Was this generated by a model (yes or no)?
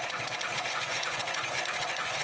yes